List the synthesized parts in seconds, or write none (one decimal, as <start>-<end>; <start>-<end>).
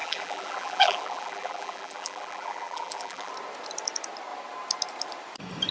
0.0-3.3